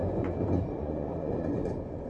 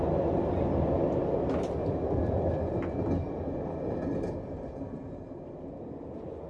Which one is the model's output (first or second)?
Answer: first